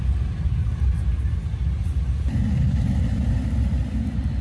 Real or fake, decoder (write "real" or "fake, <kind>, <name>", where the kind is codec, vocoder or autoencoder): real